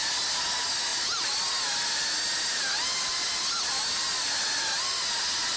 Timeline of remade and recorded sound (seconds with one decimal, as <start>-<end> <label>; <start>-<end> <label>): 0.0-5.6 recorded